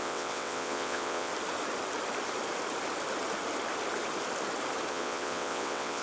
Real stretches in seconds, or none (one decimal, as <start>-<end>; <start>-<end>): 1.3-4.9